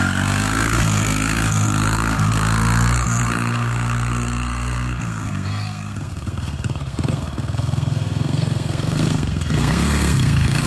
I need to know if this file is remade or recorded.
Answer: remade